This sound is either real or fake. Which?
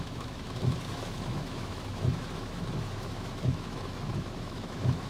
fake